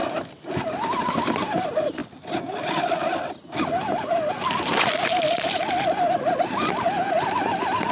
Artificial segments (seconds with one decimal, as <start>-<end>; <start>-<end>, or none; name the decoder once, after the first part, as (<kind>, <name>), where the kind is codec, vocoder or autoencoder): none